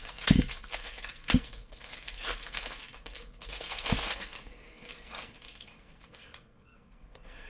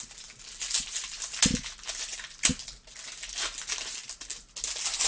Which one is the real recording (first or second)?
second